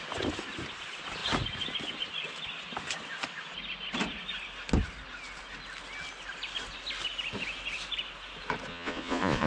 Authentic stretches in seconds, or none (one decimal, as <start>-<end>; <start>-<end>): 0.0-8.7